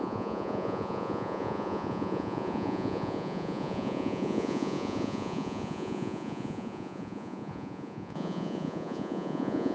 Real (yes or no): no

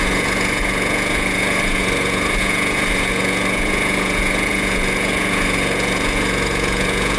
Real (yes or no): no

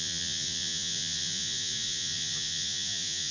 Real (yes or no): no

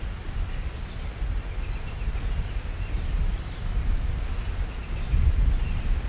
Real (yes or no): yes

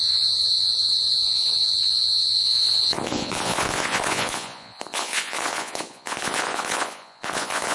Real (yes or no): no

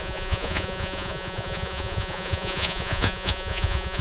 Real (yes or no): no